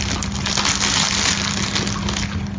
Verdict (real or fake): real